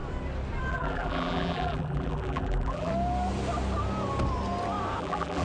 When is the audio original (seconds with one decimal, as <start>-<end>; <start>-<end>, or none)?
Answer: 0.0-0.7; 2.9-5.0